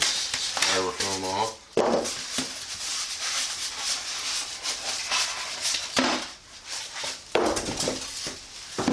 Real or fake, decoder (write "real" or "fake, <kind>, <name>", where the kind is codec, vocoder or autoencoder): real